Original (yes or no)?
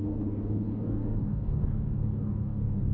no